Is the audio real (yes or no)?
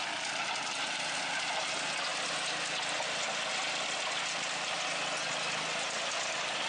yes